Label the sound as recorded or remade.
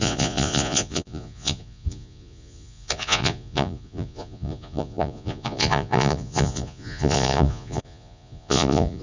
remade